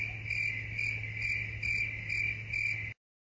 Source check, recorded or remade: recorded